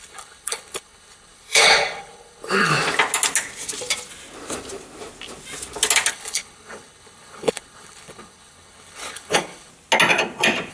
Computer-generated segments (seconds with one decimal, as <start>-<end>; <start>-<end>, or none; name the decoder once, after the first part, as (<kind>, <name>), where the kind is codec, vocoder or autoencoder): 0.0-2.7 (codec, HILCodec); 6.1-9.7